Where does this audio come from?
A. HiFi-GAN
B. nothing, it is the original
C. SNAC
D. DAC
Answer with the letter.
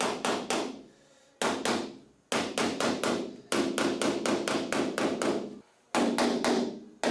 B